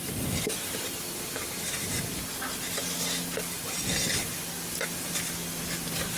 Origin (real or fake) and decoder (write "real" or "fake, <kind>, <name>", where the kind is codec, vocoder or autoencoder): real